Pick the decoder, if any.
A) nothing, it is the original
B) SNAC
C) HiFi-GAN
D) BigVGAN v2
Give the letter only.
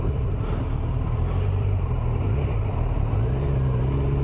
D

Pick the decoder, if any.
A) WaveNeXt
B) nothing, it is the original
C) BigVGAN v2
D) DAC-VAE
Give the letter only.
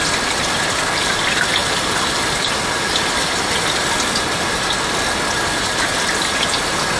B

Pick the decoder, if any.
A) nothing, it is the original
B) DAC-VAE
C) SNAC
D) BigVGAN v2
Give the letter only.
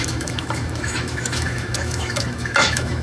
B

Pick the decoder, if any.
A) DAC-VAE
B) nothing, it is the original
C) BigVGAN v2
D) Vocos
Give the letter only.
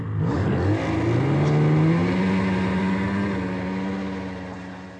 B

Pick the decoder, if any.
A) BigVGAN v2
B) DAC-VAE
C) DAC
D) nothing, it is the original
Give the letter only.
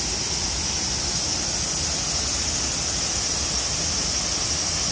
D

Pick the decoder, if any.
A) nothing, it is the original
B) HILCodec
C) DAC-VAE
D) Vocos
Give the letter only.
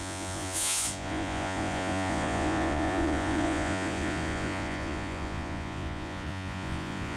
D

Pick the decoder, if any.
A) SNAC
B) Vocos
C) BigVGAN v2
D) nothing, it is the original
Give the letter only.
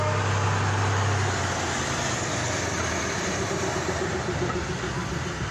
D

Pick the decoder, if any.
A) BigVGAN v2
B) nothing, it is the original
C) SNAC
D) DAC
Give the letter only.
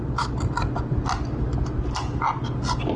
B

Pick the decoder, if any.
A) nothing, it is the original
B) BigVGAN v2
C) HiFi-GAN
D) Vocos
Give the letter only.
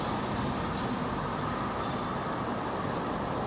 A